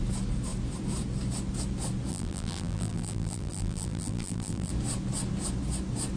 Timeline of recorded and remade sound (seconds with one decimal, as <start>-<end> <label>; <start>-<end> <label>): 0.0-2.1 recorded; 2.1-4.7 remade; 4.7-6.2 recorded